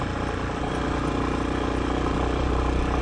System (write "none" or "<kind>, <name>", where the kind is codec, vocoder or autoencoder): none